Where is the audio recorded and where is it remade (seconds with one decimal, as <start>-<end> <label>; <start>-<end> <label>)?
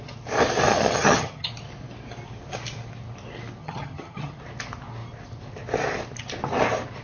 0.0-0.7 recorded; 0.7-1.5 remade; 1.5-3.6 recorded; 3.6-4.4 remade; 4.4-7.0 recorded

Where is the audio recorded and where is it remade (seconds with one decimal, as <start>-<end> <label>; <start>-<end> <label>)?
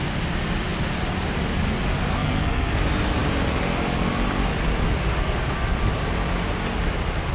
0.0-2.1 recorded; 2.1-2.8 remade; 2.8-7.3 recorded